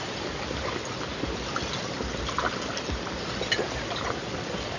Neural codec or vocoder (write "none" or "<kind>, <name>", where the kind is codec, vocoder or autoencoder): none